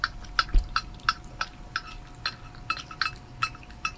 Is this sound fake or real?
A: real